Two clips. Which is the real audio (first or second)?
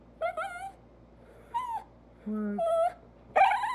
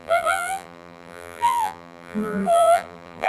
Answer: first